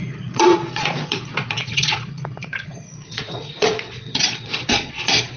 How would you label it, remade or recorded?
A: remade